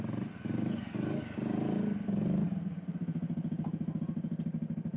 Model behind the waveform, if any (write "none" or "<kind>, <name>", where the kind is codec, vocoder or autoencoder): none